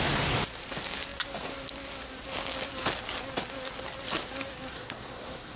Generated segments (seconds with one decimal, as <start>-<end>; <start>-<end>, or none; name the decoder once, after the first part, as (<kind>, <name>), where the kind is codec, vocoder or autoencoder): 4.7-5.6 (codec, SNAC)